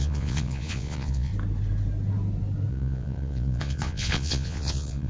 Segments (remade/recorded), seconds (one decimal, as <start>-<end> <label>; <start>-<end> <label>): 0.0-1.3 remade; 1.3-2.7 recorded; 2.7-5.1 remade